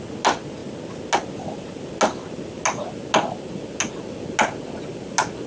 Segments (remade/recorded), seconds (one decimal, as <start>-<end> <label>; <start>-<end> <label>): 0.0-5.5 recorded